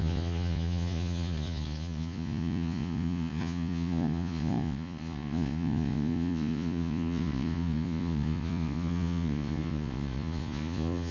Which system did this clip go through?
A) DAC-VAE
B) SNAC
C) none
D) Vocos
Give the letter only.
D